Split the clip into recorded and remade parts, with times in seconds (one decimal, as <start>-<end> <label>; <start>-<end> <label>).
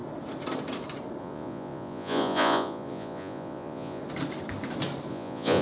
0.0-1.2 recorded; 1.2-4.0 remade; 4.0-5.1 recorded; 5.1-5.6 remade